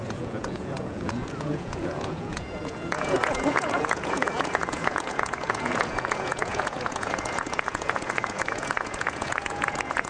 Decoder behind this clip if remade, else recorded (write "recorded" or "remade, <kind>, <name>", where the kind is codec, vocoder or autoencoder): remade, vocoder, Vocos